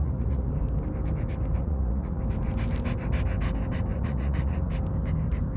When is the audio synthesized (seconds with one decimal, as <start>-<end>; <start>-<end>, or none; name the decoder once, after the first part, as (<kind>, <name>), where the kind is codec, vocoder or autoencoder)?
0.0-0.5 (vocoder, Vocos); 1.6-2.2; 3.9-4.7